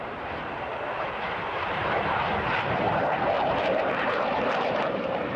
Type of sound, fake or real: fake